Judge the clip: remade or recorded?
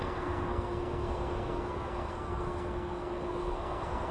remade